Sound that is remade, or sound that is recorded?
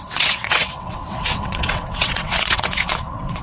remade